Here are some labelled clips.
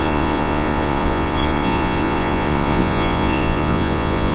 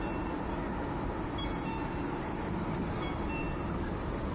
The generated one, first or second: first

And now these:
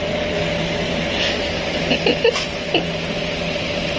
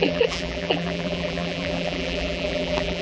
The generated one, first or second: second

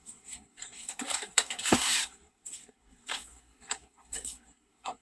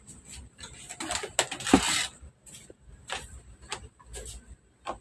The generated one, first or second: first